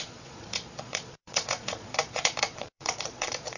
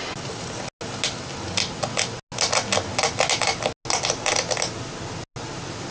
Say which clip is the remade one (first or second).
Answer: first